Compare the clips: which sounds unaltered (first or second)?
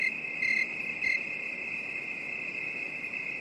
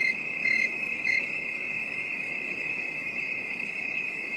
first